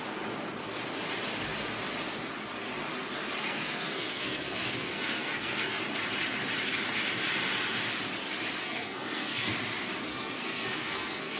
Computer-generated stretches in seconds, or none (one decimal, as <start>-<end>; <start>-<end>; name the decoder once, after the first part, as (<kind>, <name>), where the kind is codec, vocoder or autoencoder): 3.4-5.8 (codec, SNAC); 8.6-9.5; 10.1-11.4